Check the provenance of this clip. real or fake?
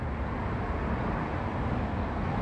real